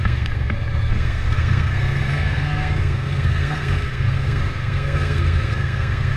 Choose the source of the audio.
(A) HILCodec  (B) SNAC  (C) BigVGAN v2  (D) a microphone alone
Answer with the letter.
B